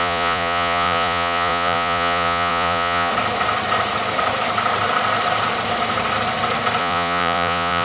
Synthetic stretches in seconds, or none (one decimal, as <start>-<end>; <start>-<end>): 0.0-3.1; 6.8-7.8